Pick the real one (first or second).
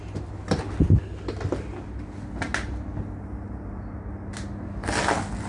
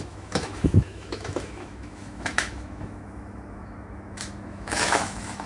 first